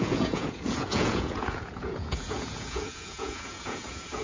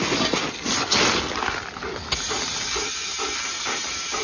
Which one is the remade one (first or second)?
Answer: first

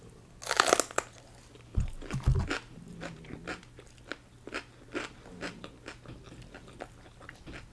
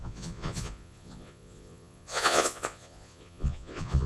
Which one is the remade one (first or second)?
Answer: second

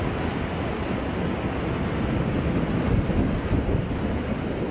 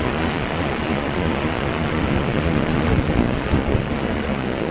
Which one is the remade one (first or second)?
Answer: second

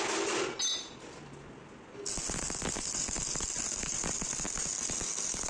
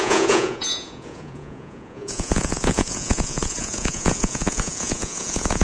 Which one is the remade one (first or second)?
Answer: second